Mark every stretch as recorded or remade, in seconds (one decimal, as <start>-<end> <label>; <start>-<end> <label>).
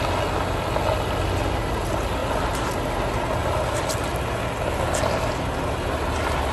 0.0-6.5 recorded